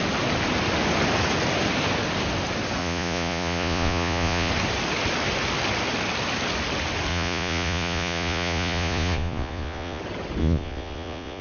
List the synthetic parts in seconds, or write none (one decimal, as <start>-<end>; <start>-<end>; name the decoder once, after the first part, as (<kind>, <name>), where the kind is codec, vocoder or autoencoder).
2.8-4.5 (vocoder, Vocos); 7.1-10.0; 10.4-11.4